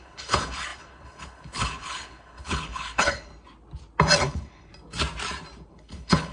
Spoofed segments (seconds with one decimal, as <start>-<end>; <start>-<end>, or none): 0.0-3.3; 4.2-4.7; 5.7-6.3